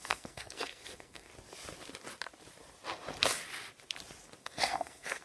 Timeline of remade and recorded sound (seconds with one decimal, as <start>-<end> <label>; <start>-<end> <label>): 0.0-1.3 remade; 1.3-4.4 recorded; 4.4-5.2 remade